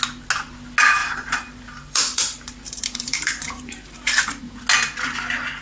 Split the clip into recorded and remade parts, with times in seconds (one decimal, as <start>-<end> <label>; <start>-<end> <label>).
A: 0.0-1.0 recorded; 1.0-4.4 remade; 4.4-5.6 recorded